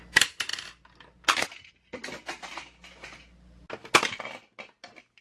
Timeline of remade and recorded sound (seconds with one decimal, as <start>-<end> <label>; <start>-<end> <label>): 0.0-5.2 recorded